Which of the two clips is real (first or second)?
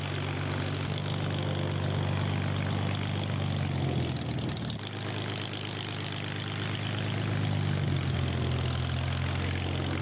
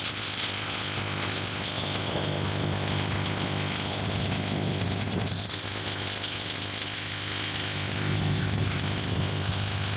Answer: first